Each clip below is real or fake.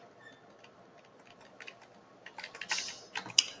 real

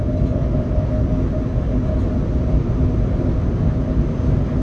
real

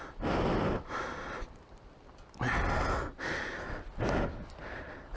real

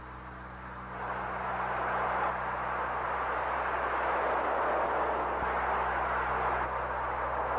real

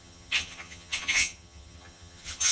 fake